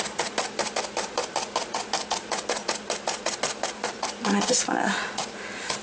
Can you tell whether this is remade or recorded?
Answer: recorded